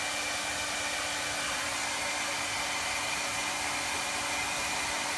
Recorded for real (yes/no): yes